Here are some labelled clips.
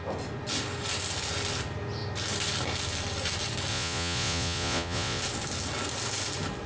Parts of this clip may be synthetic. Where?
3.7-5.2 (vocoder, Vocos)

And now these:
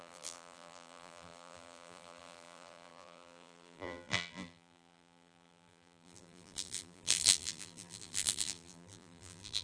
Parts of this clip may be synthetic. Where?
0.0-9.6 (vocoder, BigVGAN v2)

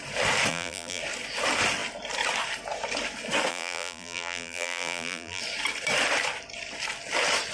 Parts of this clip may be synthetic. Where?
0.5-1.0 (vocoder, BigVGAN v2); 3.5-5.4

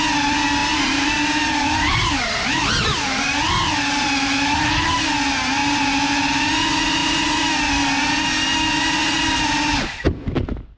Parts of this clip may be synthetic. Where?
0.6-5.1 (vocoder, BigVGAN v2); 5.6-6.4; 7.0-7.5